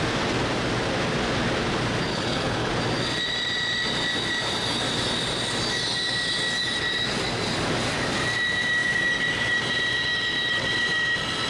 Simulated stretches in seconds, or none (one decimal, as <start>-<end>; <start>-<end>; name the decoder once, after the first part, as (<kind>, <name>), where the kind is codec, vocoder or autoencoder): 2.1-2.7 (codec, HILCodec)